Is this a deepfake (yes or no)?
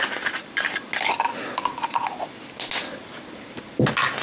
no